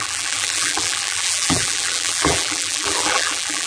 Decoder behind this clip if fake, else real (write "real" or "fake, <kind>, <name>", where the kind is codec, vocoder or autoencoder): fake, vocoder, BigVGAN v2